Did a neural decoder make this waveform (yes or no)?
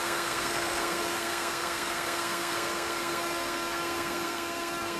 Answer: yes